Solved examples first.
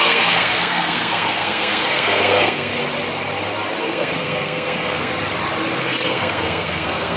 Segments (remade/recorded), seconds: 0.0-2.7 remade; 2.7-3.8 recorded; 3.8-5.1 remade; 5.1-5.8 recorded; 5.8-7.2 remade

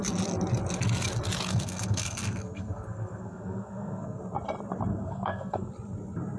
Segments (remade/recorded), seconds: 0.0-1.5 recorded; 1.5-4.2 remade; 4.2-4.9 recorded; 4.9-5.7 remade; 5.7-6.4 recorded

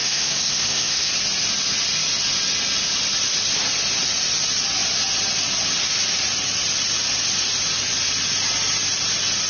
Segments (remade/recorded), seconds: 0.0-1.1 remade; 1.1-9.5 recorded

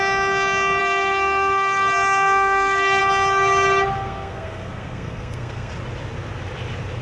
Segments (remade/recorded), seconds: 0.0-0.8 recorded; 0.8-3.0 remade; 3.0-4.0 recorded; 4.0-5.7 remade; 5.7-7.0 recorded

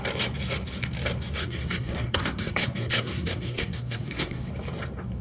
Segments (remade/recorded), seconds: 0.0-1.4 recorded; 1.4-4.5 remade; 4.5-5.2 recorded

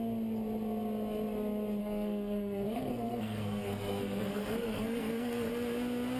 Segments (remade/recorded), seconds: 0.0-1.8 recorded; 1.8-5.5 remade; 5.5-6.2 recorded

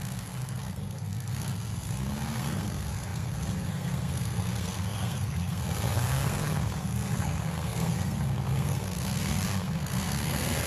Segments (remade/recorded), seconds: 0.0-10.7 remade

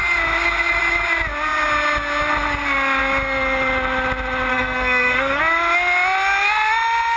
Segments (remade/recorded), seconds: 0.0-4.5 recorded; 4.5-5.4 remade; 5.4-7.2 recorded